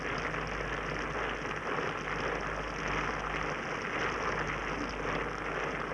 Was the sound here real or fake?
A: real